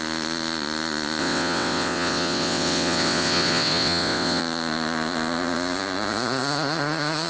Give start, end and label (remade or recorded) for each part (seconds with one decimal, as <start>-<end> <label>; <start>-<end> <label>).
0.0-1.2 recorded; 1.2-4.4 remade; 4.4-7.3 recorded